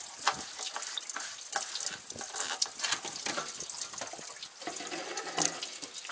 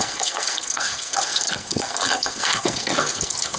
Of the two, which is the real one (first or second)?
first